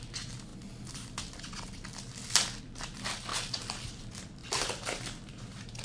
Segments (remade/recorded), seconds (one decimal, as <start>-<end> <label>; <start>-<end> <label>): 0.0-5.8 recorded